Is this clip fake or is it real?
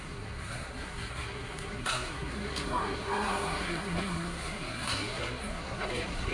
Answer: fake